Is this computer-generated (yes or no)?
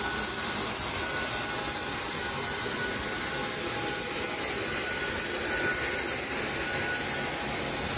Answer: no